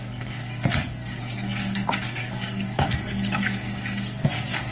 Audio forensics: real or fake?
fake